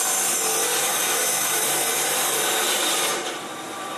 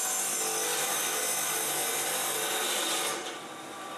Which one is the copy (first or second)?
first